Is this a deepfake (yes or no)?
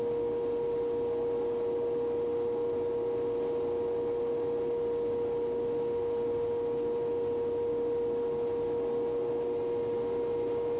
no